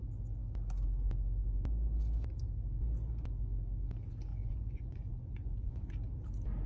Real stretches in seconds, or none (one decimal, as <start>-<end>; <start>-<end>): 0.0-4.3; 5.9-6.7